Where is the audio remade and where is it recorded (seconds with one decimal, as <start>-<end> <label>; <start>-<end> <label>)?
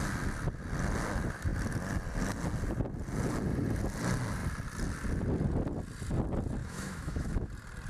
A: 0.0-6.6 recorded; 6.6-7.5 remade; 7.5-7.9 recorded